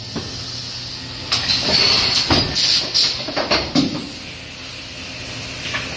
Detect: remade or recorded recorded